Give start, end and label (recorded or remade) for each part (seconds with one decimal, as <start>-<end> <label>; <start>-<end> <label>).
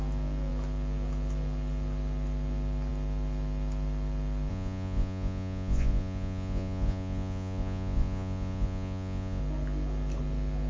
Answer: 0.0-4.5 recorded; 4.5-9.4 remade; 9.4-10.7 recorded